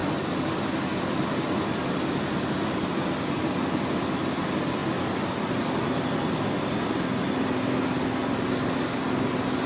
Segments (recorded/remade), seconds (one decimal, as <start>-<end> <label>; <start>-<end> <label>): 0.0-9.7 recorded